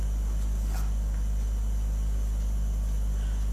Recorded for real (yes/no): yes